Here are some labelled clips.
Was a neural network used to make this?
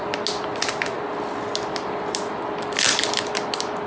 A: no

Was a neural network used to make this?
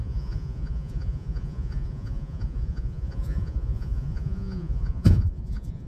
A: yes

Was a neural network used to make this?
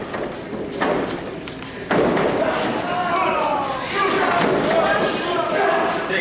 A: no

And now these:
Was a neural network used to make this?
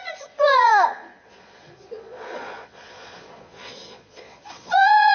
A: yes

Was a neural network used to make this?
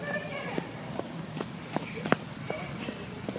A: yes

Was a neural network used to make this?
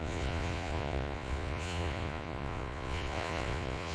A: yes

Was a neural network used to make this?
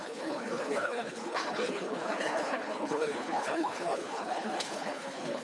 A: yes